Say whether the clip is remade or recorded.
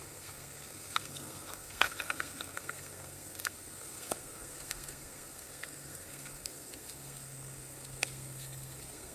remade